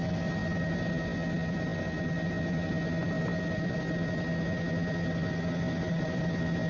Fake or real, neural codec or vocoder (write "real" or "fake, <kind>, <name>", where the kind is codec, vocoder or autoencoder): real